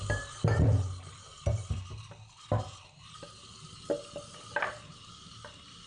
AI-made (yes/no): no